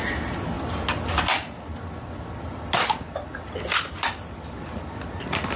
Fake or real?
real